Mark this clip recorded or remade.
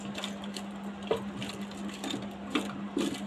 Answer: recorded